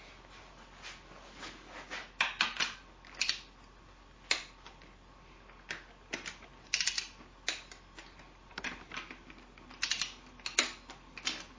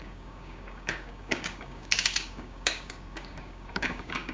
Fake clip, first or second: second